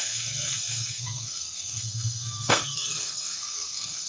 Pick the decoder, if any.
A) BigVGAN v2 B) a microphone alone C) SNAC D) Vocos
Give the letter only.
C